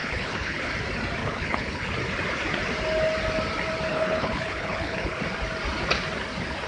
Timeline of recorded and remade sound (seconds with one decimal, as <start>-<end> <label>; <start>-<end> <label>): 0.0-0.7 remade; 0.7-1.2 recorded; 1.2-1.9 remade; 1.9-3.9 recorded; 3.9-5.2 remade; 5.2-6.7 recorded

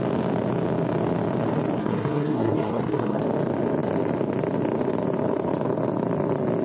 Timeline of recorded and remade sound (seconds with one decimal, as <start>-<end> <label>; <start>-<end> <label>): 0.0-1.8 recorded; 1.8-3.2 remade; 3.2-6.6 recorded

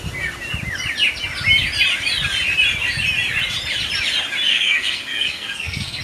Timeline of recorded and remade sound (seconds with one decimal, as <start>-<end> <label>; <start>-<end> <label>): 0.0-4.5 recorded; 4.5-6.0 remade

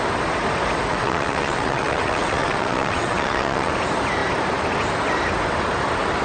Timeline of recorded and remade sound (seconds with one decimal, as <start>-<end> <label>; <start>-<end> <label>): 0.0-0.9 recorded; 0.9-3.7 remade; 3.7-6.2 recorded

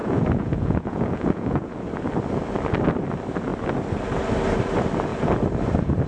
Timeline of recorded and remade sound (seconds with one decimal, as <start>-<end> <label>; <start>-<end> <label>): 0.0-1.8 remade; 1.8-6.1 recorded

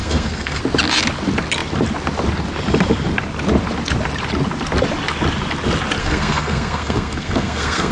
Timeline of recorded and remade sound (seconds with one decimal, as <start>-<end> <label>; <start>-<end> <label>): 0.0-0.6 remade; 0.6-6.0 recorded; 6.0-7.9 remade

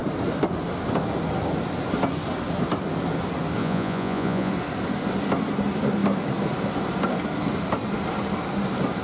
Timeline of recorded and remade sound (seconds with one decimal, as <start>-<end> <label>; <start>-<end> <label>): 0.0-3.6 recorded; 3.6-4.5 remade; 4.5-9.0 recorded

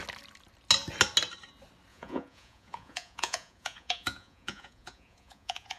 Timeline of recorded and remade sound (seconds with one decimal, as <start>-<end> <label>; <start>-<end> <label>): 0.0-1.9 recorded; 1.9-5.8 remade